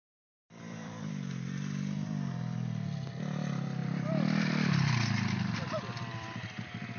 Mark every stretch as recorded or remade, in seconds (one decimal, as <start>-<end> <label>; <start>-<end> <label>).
0.0-7.0 remade